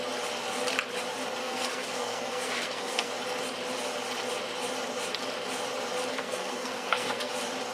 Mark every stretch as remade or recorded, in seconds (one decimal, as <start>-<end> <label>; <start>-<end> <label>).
0.0-1.4 recorded; 1.4-3.1 remade; 3.1-6.1 recorded; 6.1-7.3 remade; 7.3-7.7 recorded